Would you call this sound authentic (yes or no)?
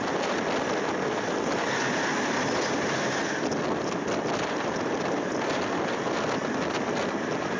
yes